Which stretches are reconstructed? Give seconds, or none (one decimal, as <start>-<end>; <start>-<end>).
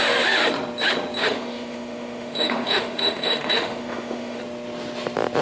1.2-4.4